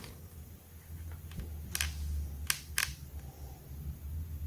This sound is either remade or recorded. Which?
recorded